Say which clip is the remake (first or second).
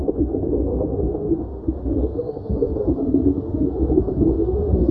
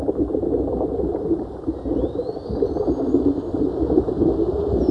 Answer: first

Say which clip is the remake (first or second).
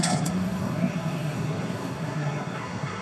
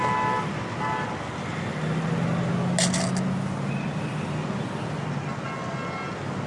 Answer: first